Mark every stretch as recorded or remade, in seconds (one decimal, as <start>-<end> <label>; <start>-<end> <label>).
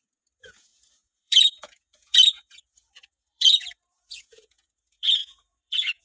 0.0-6.0 remade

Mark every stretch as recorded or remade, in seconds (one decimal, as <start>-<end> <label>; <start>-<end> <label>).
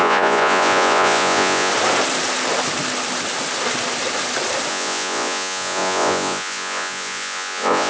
0.0-1.7 remade; 1.7-4.7 recorded; 4.7-7.9 remade